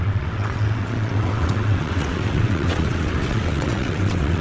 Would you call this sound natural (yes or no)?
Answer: no